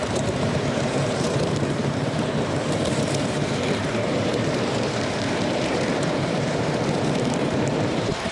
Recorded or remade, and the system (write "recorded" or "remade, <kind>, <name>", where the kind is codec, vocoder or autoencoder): remade, vocoder, BigVGAN v2